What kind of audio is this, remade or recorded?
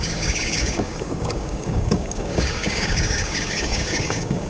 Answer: remade